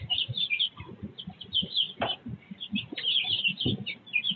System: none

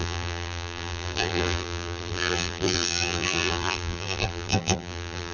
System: vocoder, BigVGAN v2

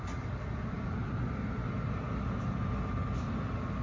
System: none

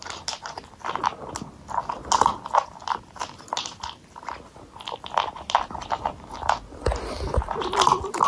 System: none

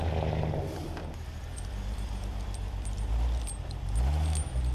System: none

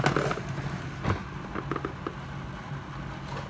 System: none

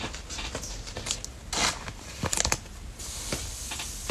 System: none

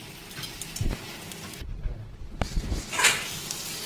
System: none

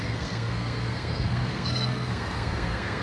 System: codec, SNAC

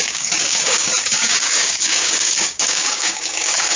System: codec, DAC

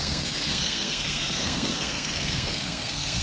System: codec, SNAC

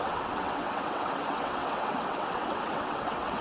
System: vocoder, WaveNeXt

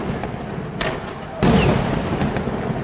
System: none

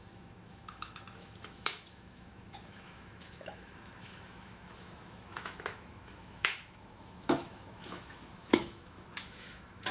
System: autoencoder, DAC-VAE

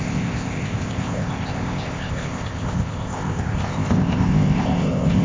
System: codec, ZipCodec